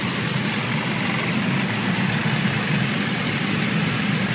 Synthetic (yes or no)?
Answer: no